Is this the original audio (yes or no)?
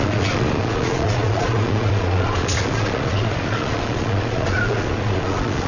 no